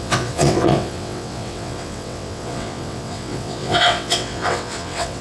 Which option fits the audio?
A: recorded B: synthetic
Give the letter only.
B